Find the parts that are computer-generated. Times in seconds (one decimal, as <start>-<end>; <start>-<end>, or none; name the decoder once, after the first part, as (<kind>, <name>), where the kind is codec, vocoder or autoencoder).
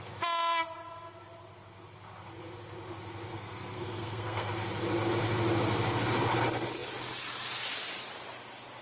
3.3-4.5 (codec, SNAC)